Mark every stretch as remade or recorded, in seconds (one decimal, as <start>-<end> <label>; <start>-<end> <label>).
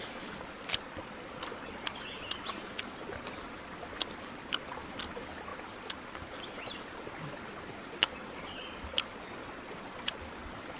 0.0-10.8 recorded